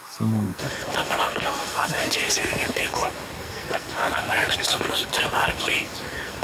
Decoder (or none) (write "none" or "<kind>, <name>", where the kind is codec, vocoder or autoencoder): codec, SNAC